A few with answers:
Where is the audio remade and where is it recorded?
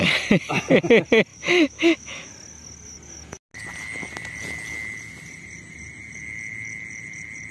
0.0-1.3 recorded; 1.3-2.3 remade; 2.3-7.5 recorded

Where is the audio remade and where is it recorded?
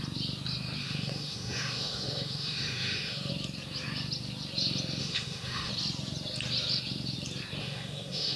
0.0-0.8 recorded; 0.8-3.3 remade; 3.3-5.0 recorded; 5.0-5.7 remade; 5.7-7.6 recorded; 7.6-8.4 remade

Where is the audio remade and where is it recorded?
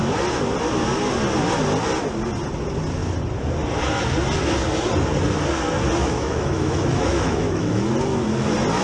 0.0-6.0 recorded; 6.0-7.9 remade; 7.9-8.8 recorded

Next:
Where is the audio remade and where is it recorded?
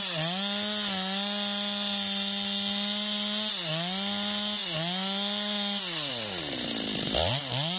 0.0-7.8 recorded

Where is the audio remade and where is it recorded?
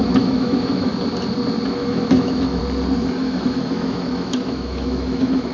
0.0-0.9 remade; 0.9-1.7 recorded; 1.7-2.6 remade; 2.6-3.2 recorded; 3.2-5.5 remade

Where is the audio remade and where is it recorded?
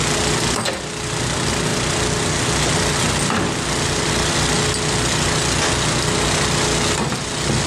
0.0-7.7 recorded